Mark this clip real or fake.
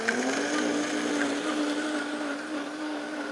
real